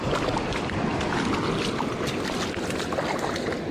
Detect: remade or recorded recorded